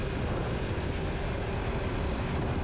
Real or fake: real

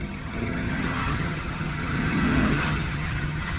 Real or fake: fake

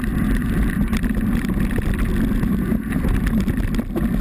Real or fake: fake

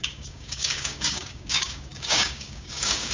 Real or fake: fake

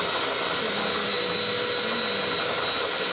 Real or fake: real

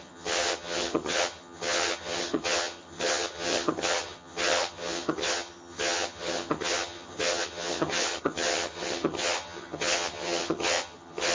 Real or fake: fake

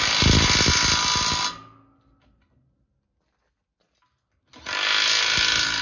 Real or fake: real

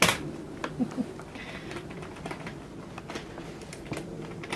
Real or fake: real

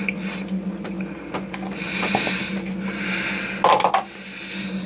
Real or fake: real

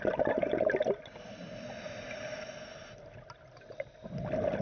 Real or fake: real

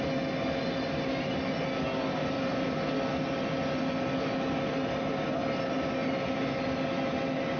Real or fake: real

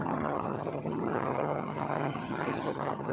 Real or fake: fake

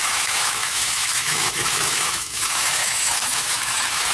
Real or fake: fake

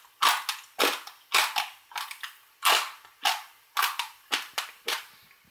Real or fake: real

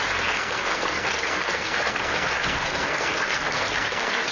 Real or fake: fake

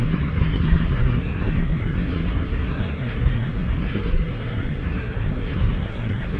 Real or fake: fake